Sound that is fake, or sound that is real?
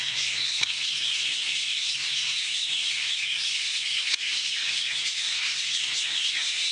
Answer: fake